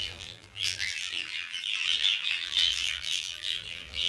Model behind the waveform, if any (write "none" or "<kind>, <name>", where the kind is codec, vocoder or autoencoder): vocoder, BigVGAN v2